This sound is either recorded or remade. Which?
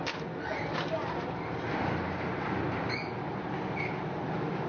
recorded